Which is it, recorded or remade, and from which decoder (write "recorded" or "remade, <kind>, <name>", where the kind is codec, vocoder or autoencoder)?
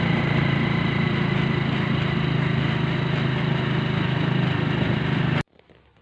recorded